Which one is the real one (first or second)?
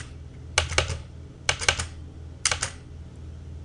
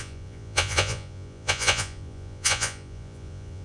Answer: first